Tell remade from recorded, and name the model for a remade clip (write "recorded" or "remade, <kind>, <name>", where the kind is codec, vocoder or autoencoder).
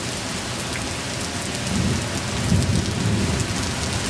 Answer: recorded